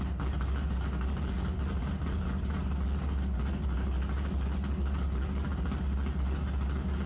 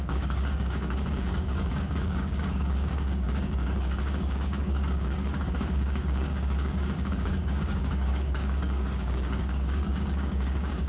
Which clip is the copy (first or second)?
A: second